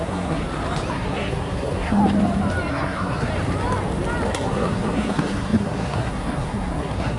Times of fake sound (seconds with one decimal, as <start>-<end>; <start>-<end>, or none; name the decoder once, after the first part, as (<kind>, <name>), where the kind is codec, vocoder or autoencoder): 0.0-0.4 (codec, SNAC); 0.9-2.0; 2.7-3.3; 4.3-7.2